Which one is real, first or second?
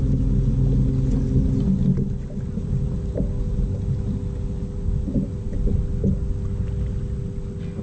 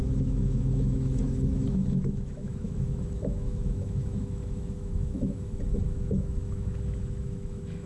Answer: first